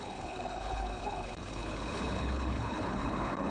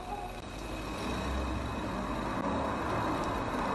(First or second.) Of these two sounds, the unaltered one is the second